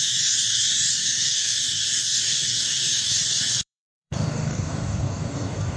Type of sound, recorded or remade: remade